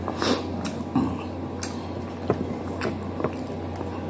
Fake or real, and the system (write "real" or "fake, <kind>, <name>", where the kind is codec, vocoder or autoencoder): real